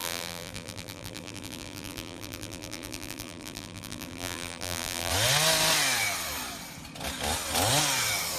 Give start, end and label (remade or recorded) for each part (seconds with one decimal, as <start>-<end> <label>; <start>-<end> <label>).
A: 0.0-5.1 remade; 5.1-8.4 recorded